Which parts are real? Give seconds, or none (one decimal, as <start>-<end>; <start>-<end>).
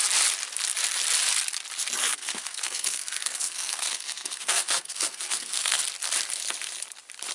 0.0-2.0; 5.8-7.3